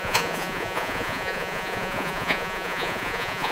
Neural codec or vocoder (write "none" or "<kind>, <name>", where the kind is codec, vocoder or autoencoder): vocoder, Vocos